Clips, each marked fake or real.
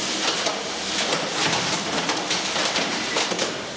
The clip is real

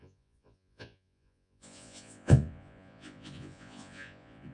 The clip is fake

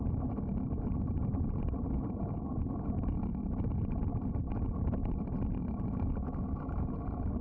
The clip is real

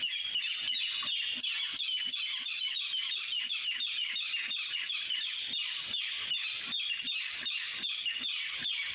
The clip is real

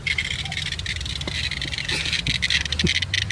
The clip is real